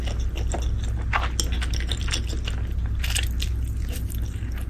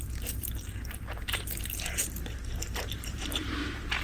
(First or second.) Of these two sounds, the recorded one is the first